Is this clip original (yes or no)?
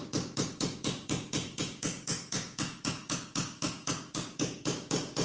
no